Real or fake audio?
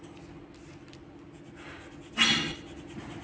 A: real